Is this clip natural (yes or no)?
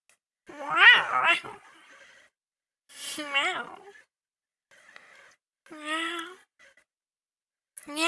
yes